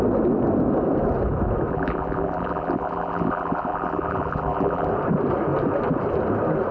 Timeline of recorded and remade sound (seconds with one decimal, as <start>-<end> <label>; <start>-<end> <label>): 0.0-1.7 recorded; 1.7-4.9 remade; 4.9-6.7 recorded